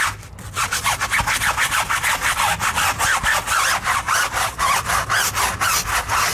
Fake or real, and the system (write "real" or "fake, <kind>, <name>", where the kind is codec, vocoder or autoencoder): real